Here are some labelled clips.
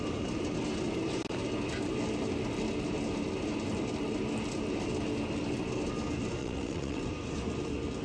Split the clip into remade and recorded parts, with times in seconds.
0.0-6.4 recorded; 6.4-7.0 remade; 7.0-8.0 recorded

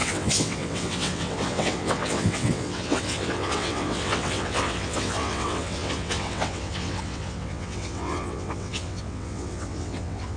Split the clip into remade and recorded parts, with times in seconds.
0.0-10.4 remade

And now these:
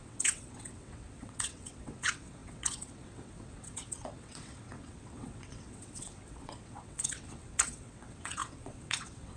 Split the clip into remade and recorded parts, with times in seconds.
0.0-9.4 remade